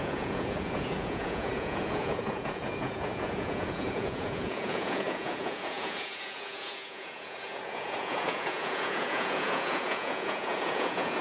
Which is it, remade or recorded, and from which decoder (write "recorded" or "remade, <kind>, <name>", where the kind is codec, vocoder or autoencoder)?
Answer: remade, vocoder, Vocos